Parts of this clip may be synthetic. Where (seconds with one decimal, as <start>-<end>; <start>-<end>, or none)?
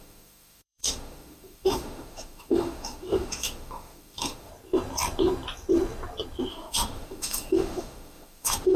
0.0-4.5; 6.5-8.8